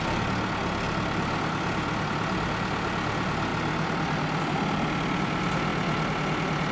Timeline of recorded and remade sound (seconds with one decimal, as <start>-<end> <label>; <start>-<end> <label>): 0.0-6.7 recorded